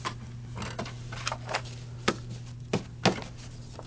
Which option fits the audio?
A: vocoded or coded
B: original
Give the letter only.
B